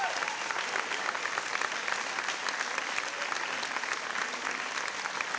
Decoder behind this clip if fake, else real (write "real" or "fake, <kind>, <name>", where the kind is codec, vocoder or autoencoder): real